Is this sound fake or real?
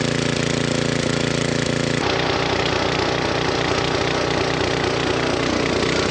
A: real